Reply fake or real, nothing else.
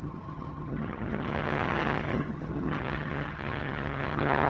fake